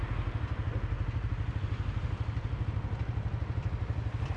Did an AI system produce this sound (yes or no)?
no